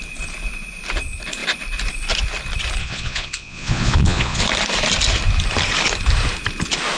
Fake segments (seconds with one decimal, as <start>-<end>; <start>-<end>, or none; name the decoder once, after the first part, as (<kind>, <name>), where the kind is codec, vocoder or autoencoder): 2.8-4.4 (vocoder, Vocos)